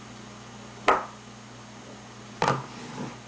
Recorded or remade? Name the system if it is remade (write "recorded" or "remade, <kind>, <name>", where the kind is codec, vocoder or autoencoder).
recorded